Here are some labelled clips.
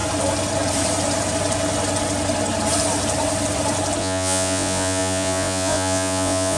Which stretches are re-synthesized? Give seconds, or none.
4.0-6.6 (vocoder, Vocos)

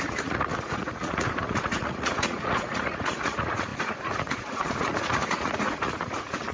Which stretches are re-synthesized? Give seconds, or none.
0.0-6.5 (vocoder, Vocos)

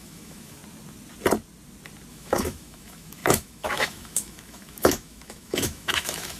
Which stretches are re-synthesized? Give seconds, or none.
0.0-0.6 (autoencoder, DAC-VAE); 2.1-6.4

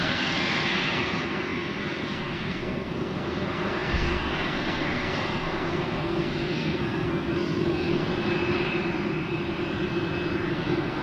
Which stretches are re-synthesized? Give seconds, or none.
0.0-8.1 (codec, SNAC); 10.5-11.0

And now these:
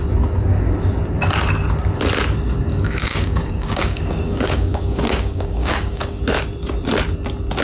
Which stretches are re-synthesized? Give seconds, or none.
2.7-6.2 (codec, DAC)

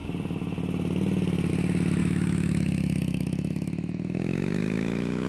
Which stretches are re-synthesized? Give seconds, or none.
2.0-5.3 (autoencoder, DAC-VAE)

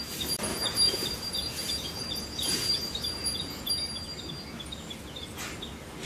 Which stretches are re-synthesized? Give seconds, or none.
0.5-3.7 (vocoder, Vocos)